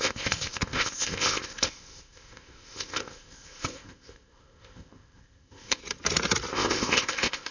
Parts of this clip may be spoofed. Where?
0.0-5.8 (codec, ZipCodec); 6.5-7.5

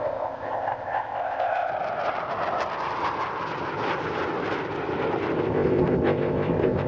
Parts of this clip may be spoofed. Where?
0.0-1.7 (codec, ZipCodec); 5.4-6.9

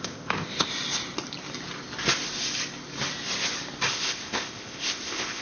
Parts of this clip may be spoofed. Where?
0.0-0.7 (codec, ZipCodec); 3.9-5.4

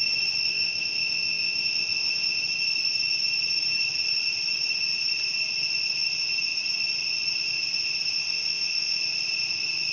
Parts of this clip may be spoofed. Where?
0.4-2.4 (codec, ZipCodec); 8.2-9.0

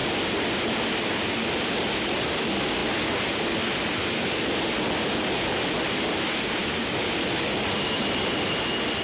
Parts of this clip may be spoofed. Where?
none